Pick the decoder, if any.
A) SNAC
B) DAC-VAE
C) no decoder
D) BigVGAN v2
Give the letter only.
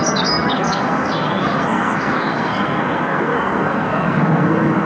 A